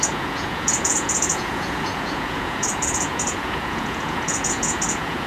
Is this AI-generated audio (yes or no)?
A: yes